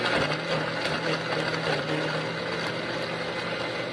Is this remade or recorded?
recorded